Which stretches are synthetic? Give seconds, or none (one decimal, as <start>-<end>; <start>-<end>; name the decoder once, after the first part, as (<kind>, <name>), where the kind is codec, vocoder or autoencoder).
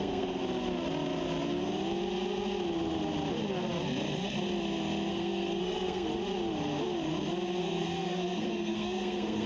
0.0-0.4 (codec, SNAC); 5.1-6.1; 7.6-9.5